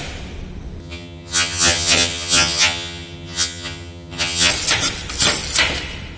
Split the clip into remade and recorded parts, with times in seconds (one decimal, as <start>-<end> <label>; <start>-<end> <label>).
0.0-0.8 recorded; 0.8-4.5 remade; 4.5-6.2 recorded